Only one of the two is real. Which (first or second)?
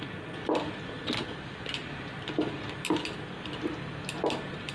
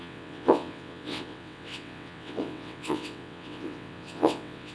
first